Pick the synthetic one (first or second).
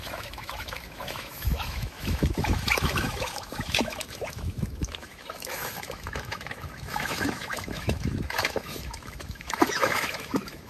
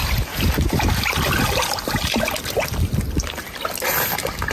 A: first